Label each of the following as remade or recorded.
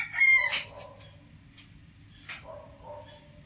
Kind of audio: recorded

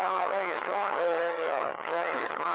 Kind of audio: remade